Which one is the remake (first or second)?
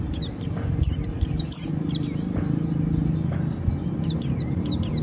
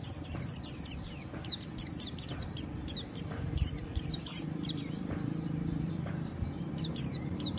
second